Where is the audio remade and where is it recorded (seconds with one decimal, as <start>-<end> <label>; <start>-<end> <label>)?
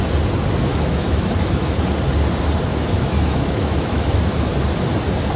0.0-0.7 recorded; 0.7-1.7 remade; 1.7-2.7 recorded; 2.7-4.5 remade; 4.5-5.4 recorded